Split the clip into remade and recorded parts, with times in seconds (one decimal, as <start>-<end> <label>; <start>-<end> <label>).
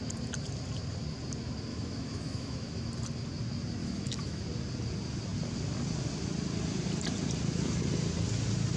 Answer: 0.0-1.7 recorded; 1.7-2.9 remade; 2.9-3.8 recorded; 3.8-4.4 remade; 4.4-8.8 recorded